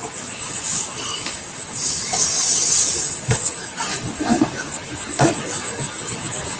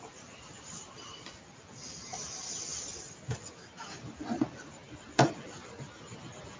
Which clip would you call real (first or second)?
second